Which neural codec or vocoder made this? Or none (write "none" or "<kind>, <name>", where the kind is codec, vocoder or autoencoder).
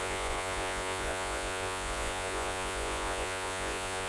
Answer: vocoder, Vocos